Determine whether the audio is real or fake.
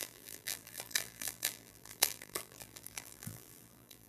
fake